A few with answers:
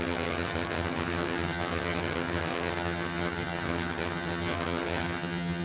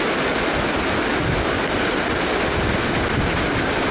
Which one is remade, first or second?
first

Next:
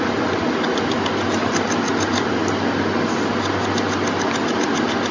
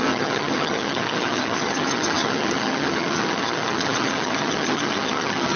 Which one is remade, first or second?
second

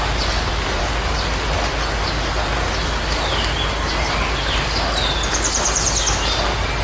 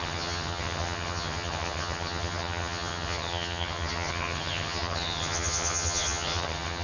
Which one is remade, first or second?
second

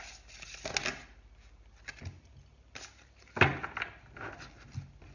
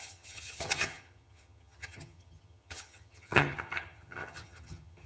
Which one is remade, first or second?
second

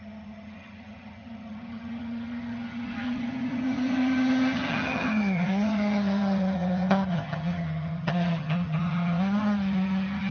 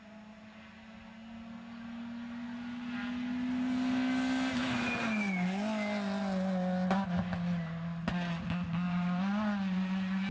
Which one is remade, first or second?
first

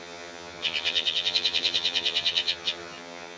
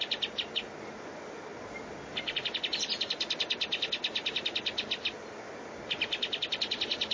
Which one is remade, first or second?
first